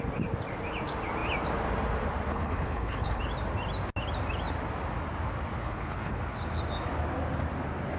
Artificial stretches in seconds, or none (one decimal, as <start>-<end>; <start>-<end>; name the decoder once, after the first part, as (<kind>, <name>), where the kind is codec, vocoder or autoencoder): 2.3-3.2 (codec, HILCodec); 5.6-6.2